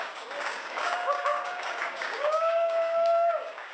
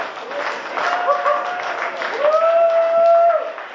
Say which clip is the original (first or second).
second